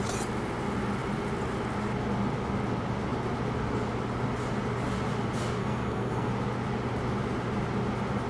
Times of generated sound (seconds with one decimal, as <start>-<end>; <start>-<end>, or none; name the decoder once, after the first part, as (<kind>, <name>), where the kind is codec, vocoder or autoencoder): 5.6-6.3 (codec, SNAC)